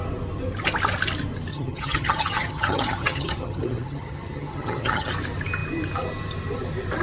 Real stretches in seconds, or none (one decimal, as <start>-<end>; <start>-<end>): 0.0-1.5; 5.1-7.0